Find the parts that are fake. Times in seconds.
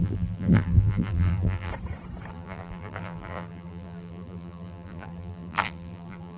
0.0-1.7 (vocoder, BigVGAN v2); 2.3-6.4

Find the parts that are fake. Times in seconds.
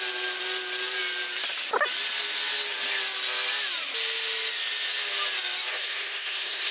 5.7-6.7 (codec, SNAC)